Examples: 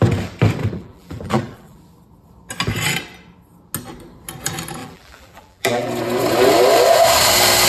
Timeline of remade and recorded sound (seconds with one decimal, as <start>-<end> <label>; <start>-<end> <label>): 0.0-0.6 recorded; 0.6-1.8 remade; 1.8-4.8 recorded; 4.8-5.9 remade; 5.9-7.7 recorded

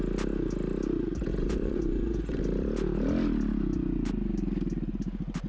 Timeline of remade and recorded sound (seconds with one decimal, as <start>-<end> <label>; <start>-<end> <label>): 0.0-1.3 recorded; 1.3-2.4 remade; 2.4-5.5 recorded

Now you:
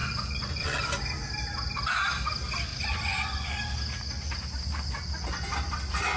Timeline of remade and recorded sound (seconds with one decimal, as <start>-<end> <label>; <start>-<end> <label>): 0.0-0.8 remade; 0.8-2.7 recorded; 2.7-3.6 remade; 3.6-6.2 recorded

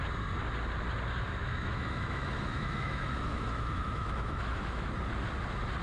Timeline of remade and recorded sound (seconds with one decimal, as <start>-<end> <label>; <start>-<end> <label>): 0.0-1.4 recorded; 1.4-4.9 remade; 4.9-5.8 recorded

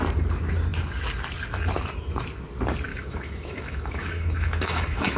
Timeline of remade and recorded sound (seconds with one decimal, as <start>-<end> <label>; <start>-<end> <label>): 0.0-2.9 recorded; 2.9-5.2 remade

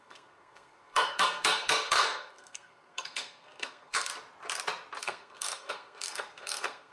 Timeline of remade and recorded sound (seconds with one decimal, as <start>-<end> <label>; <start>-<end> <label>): 0.0-4.1 remade; 4.1-5.0 recorded; 5.0-6.9 remade

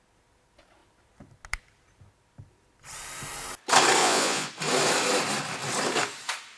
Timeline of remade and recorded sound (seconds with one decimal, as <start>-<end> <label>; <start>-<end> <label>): 0.0-4.0 recorded; 4.0-4.5 remade; 4.5-6.6 recorded